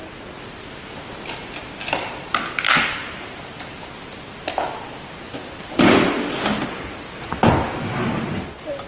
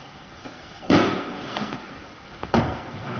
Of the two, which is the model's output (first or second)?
second